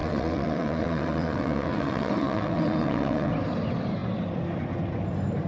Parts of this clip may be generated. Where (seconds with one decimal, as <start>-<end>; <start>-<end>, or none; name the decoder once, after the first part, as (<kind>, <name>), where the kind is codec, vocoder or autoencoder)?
0.0-3.3 (vocoder, WaveNeXt)